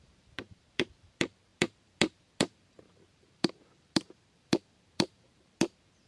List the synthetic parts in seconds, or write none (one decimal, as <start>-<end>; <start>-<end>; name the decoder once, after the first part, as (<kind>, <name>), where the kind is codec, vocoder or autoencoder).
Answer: 0.0-6.1 (vocoder, BigVGAN v2)